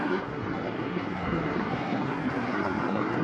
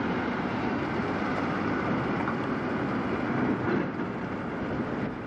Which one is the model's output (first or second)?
first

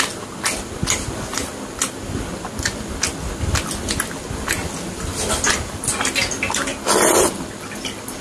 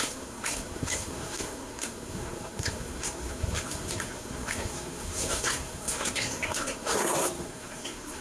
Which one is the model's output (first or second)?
second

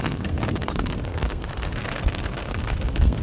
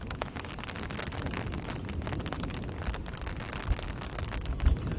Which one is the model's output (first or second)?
first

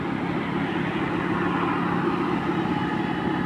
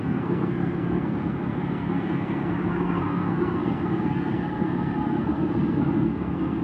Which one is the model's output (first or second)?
second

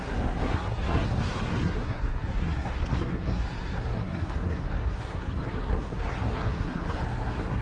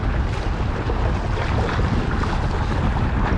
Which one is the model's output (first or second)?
first